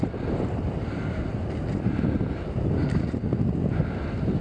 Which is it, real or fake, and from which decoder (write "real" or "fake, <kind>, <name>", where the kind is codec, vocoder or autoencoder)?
real